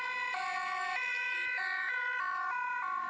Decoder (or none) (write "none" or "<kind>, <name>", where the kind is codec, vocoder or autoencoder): vocoder, BigVGAN v2